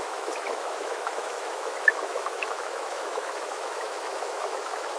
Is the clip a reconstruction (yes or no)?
yes